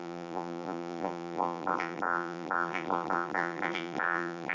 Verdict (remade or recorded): remade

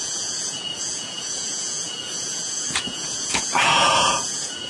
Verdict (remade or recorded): remade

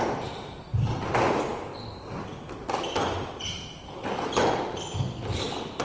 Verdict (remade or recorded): recorded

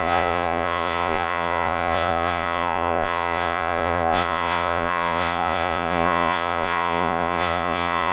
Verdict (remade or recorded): remade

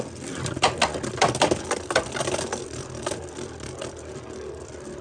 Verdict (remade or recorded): recorded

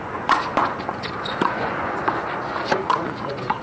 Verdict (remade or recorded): remade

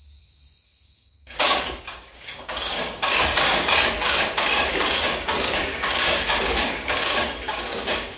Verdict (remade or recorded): remade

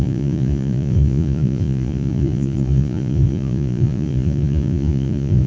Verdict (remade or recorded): remade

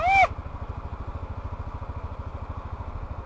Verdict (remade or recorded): recorded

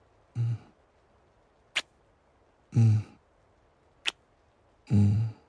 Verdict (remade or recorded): recorded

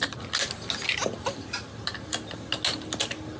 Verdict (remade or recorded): recorded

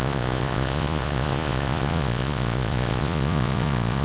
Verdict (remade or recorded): remade